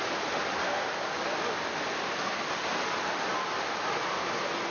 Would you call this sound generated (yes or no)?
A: no